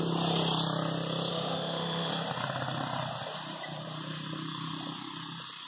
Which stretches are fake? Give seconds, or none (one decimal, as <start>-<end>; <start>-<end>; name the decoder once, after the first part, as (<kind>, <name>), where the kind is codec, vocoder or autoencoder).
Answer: 1.3-2.1 (autoencoder, DAC-VAE)

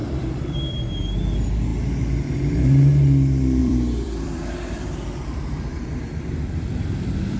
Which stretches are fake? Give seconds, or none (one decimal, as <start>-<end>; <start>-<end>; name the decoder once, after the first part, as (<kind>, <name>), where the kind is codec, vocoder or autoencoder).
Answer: 0.0-0.9 (vocoder, BigVGAN v2); 3.6-6.0

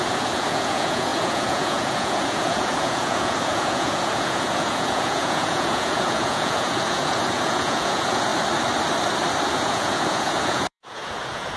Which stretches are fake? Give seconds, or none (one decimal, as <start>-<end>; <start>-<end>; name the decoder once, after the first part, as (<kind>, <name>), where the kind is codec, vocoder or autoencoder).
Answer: 0.0-8.3 (vocoder, Vocos); 9.4-11.6

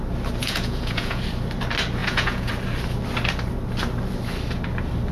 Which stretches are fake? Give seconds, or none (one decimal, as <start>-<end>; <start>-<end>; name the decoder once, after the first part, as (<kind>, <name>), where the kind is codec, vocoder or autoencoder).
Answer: 0.4-1.2 (vocoder, Vocos); 2.0-2.5